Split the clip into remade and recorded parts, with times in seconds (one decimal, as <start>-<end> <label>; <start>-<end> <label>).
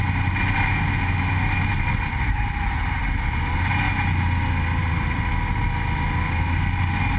0.0-1.7 recorded; 1.7-3.0 remade; 3.0-4.8 recorded; 4.8-5.3 remade; 5.3-7.2 recorded